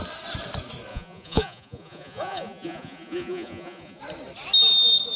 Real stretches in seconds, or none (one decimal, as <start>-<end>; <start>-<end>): 0.0-0.9; 4.0-5.2